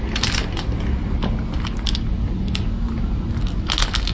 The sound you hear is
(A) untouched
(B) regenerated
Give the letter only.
A